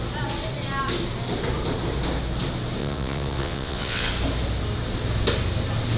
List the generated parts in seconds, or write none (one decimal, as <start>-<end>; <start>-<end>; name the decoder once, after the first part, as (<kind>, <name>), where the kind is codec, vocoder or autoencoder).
2.8-4.1 (vocoder, WaveNeXt)